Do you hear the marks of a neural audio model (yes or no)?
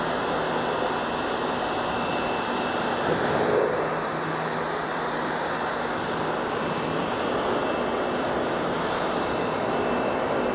no